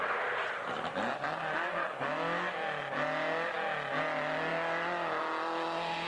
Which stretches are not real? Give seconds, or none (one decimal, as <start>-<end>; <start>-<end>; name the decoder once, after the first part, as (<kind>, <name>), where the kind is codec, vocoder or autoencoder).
none